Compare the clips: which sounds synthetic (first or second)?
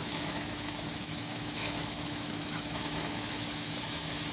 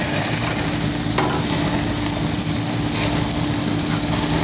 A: first